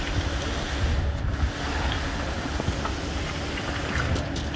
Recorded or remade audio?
recorded